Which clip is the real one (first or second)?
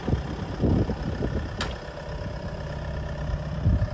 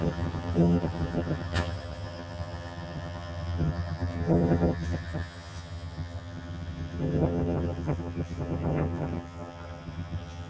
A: first